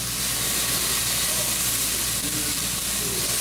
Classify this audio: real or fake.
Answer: real